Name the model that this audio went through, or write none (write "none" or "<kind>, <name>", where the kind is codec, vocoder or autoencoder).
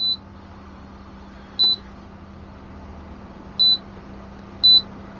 none